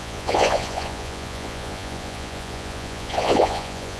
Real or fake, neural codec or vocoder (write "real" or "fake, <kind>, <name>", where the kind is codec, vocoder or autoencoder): fake, vocoder, Vocos